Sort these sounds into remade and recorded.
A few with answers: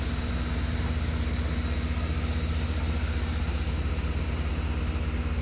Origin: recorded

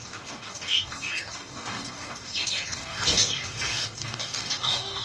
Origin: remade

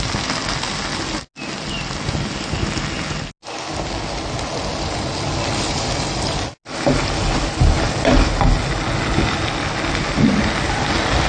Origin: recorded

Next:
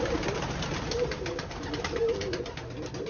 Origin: recorded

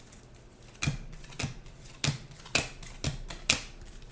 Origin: recorded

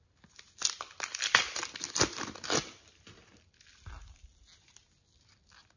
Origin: recorded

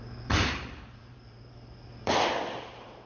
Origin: remade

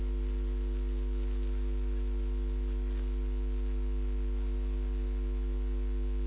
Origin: recorded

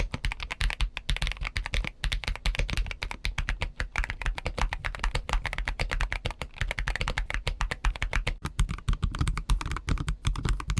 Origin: recorded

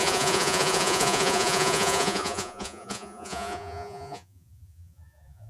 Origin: remade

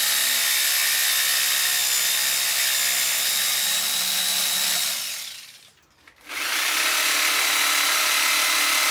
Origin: recorded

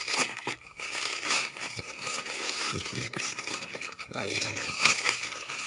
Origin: remade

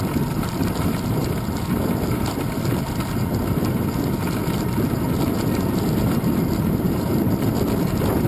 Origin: recorded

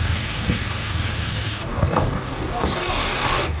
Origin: remade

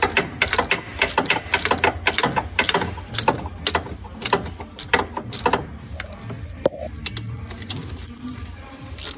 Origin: recorded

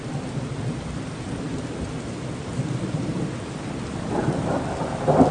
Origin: recorded